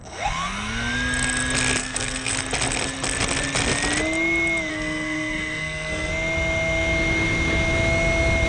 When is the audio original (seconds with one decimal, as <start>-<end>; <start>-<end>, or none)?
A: 0.0-1.8; 2.3-4.7; 6.1-8.5